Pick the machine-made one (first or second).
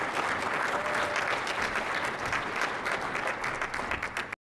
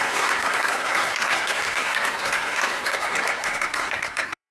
second